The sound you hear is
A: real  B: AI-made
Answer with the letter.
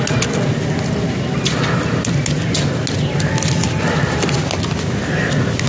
A